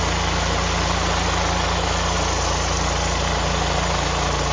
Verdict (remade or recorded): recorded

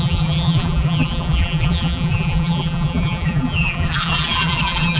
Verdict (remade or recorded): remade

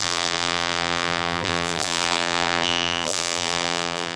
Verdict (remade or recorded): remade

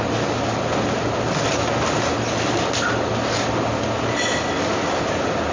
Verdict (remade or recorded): recorded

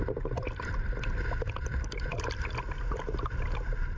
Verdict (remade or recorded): remade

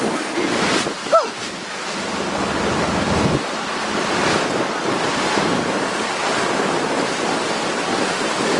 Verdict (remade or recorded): recorded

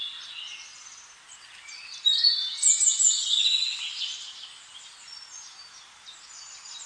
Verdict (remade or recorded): recorded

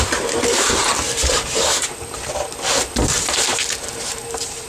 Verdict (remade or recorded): remade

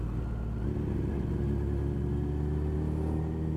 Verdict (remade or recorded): recorded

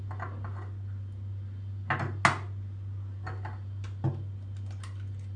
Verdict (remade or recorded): recorded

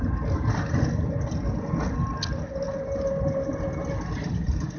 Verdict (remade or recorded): recorded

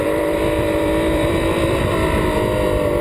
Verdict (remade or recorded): remade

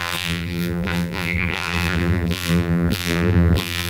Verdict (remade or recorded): remade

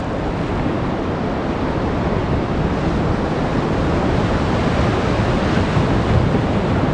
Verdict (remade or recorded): recorded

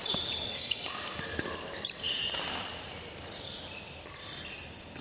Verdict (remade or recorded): remade